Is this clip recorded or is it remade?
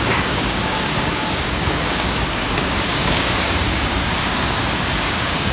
remade